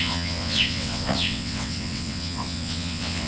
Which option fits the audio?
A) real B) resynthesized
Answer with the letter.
B